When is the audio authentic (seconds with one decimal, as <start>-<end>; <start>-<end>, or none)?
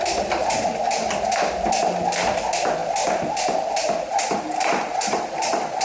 0.0-5.8